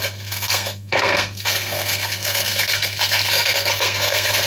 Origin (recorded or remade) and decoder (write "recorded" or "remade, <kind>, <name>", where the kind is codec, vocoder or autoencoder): remade, codec, SNAC